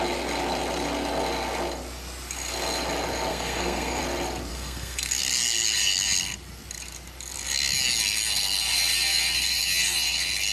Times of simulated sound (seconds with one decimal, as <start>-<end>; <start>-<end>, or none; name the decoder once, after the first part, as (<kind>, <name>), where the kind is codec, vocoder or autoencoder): 3.3-4.0 (codec, SNAC); 4.5-5.2